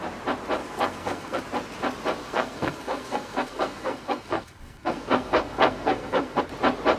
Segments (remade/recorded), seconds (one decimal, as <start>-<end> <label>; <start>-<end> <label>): 0.0-0.6 recorded; 0.6-1.4 remade; 1.4-2.2 recorded; 2.2-6.4 remade; 6.4-7.0 recorded